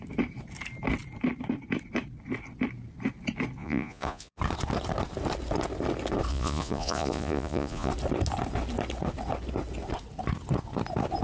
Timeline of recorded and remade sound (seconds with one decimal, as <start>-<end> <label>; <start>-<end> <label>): 0.0-3.6 recorded; 3.6-4.4 remade; 4.4-6.3 recorded; 6.3-7.9 remade; 7.9-11.2 recorded